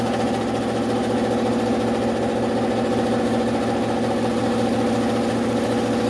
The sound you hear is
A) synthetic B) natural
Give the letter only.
B